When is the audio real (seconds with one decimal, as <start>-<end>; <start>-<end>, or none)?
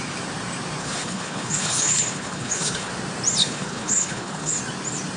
0.0-0.8; 2.9-3.4; 4.6-5.2